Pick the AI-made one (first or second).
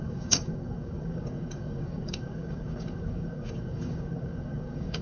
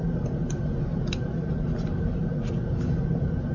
first